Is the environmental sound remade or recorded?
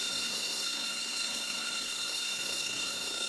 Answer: remade